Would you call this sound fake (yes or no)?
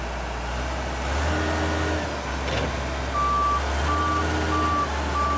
no